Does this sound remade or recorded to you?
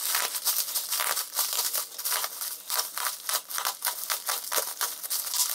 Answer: recorded